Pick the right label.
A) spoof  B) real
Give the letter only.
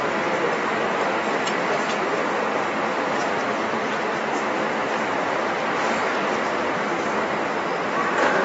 B